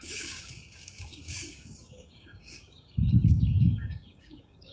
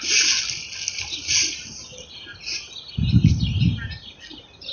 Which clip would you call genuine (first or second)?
second